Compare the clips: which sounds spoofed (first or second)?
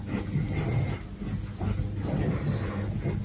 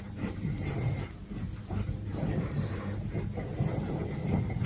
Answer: second